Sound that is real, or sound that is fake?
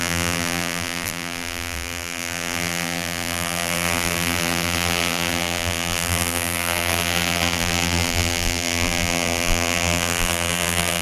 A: fake